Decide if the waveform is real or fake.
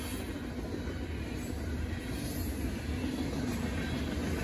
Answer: real